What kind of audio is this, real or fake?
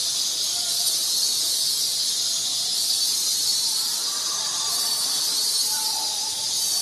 real